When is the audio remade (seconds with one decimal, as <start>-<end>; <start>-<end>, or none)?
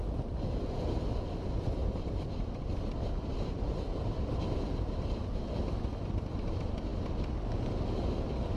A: none